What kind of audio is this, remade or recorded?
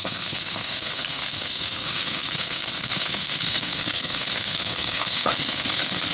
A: remade